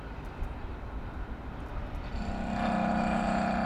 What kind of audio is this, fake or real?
real